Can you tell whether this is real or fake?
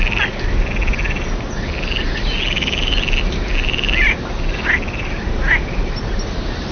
real